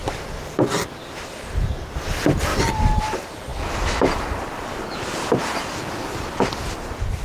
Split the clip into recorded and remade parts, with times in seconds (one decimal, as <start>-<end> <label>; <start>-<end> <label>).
0.0-7.2 recorded